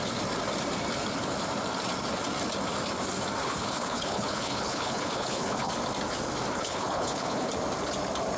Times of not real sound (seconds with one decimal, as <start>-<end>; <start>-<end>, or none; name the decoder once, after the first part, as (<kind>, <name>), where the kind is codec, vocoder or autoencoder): 3.4-5.7 (codec, HILCodec); 6.5-7.5

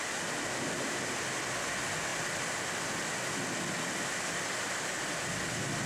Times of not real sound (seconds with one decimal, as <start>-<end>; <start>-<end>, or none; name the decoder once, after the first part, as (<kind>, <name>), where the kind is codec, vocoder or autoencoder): none